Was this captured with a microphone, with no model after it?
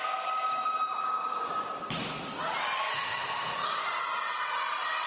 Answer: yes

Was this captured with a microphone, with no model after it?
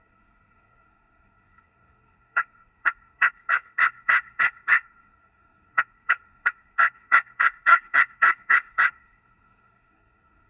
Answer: no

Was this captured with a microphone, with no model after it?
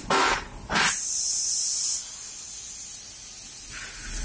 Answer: yes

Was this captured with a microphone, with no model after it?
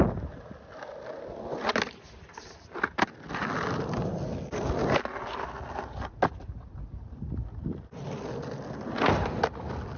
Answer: yes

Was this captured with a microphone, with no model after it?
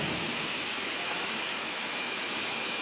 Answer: no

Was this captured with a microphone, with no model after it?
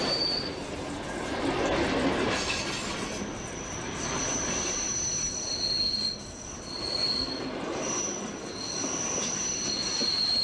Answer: yes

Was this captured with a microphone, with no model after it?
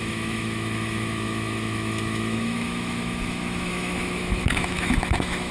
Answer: no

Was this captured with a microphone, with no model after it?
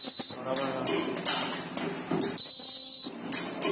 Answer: yes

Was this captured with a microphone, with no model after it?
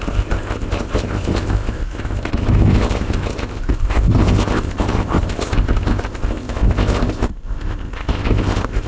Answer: no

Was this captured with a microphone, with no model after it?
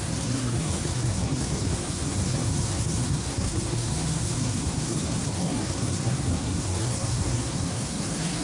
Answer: no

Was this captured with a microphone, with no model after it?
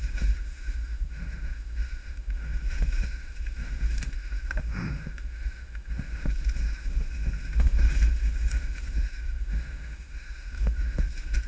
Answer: no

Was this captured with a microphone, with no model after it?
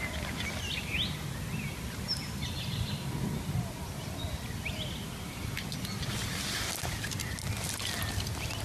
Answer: yes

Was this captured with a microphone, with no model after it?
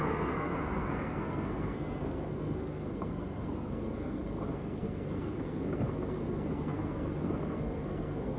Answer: no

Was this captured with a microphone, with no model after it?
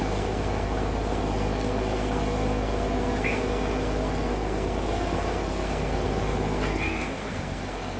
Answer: no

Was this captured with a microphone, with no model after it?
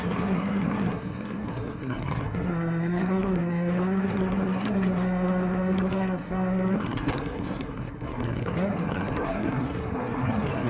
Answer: no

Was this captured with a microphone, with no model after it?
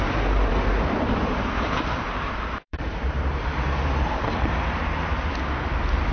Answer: no